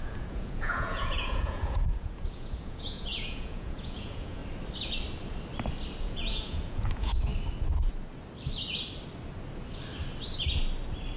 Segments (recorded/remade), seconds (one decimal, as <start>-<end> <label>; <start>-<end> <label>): 0.0-4.4 remade; 4.4-6.0 recorded; 6.0-7.3 remade; 7.3-11.2 recorded